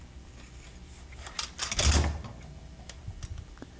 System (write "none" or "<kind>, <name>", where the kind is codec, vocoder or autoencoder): none